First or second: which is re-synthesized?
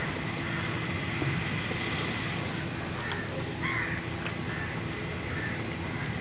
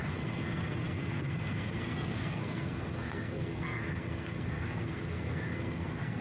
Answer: second